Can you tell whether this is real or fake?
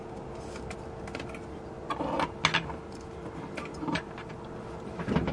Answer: real